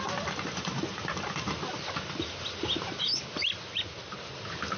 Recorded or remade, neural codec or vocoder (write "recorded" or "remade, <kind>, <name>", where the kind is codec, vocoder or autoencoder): recorded